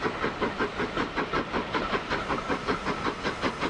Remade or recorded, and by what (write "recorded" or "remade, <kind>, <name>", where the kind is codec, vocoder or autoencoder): recorded